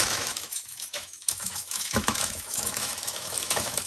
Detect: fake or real fake